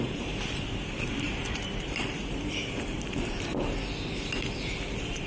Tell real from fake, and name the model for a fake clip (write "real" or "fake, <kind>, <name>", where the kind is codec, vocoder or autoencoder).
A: fake, vocoder, BigVGAN v2